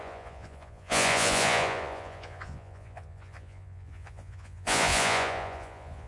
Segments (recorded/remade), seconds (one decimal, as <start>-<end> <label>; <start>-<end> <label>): 0.0-6.1 remade